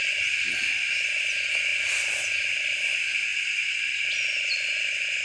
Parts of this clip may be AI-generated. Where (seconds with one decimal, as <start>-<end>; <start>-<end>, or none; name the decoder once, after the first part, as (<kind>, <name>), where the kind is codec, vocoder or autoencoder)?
none